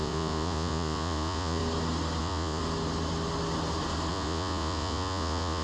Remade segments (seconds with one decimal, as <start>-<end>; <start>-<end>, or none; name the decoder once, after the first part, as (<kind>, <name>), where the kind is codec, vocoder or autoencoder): 0.0-1.6 (vocoder, Vocos); 2.2-2.6; 4.1-5.6

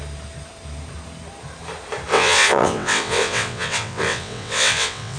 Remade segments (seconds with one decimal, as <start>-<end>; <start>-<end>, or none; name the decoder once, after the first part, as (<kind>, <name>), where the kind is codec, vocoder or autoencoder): 2.1-5.2 (vocoder, WaveNeXt)

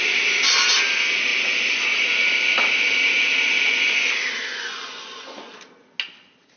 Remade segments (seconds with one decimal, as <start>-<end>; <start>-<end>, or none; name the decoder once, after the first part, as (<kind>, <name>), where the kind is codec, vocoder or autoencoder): 4.5-5.5 (vocoder, Vocos)

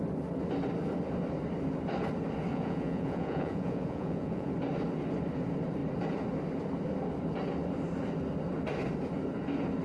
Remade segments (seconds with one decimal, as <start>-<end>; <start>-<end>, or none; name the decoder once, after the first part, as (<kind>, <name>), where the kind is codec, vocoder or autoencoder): 2.5-4.5 (vocoder, Vocos)